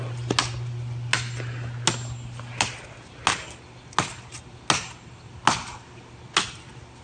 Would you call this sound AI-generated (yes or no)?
no